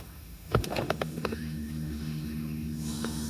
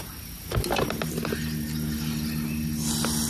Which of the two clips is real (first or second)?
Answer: second